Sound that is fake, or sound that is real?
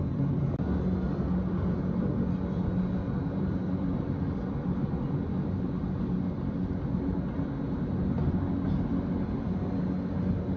real